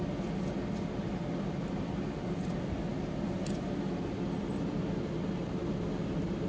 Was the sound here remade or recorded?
recorded